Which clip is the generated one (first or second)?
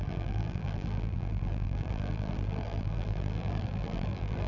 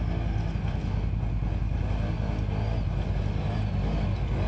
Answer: first